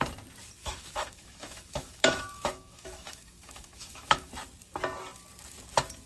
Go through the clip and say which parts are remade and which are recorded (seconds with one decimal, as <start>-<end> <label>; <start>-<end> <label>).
0.0-0.6 recorded; 0.6-4.3 remade; 4.3-6.1 recorded